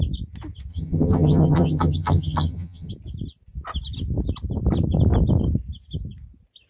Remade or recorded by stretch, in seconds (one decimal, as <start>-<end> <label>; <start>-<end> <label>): 0.0-0.7 recorded; 0.7-2.9 remade; 2.9-6.7 recorded